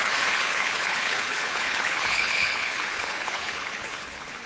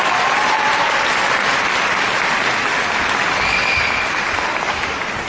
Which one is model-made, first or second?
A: first